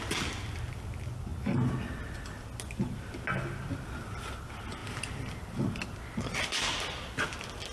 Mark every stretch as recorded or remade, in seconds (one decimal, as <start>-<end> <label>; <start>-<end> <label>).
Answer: 0.0-7.7 recorded